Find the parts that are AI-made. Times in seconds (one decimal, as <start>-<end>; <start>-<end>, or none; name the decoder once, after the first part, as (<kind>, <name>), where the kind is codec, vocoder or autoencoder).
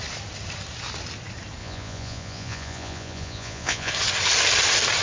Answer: 1.6-3.9 (vocoder, Vocos)